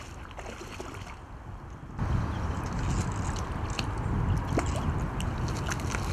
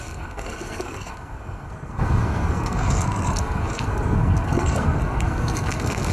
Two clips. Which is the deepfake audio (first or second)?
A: second